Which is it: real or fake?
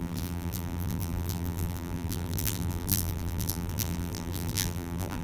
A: fake